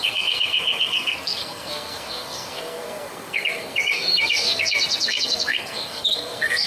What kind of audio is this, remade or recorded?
remade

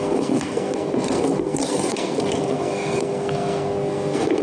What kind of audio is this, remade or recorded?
remade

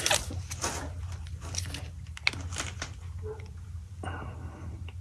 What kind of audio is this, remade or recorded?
recorded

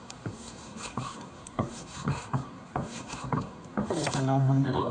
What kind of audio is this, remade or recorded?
remade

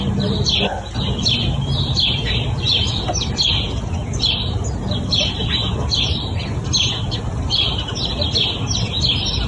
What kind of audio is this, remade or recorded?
recorded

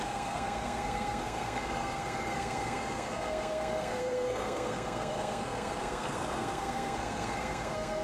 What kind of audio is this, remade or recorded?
remade